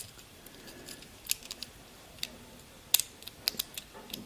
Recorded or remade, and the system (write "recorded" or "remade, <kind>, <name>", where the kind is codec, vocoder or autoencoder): recorded